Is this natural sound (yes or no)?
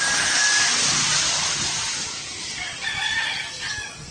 yes